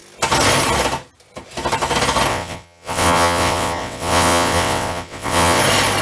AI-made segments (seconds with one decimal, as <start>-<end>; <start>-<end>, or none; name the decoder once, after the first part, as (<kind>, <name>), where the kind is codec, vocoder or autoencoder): 2.3-5.6 (vocoder, WaveNeXt)